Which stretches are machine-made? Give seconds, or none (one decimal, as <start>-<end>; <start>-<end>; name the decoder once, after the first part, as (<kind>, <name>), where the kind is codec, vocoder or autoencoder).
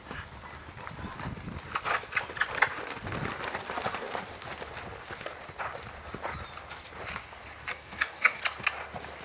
7.7-8.4 (codec, DAC)